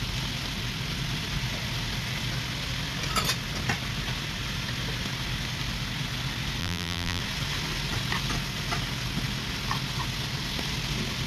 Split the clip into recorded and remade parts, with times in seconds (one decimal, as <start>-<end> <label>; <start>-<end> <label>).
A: 0.0-6.6 recorded; 6.6-7.2 remade; 7.2-11.3 recorded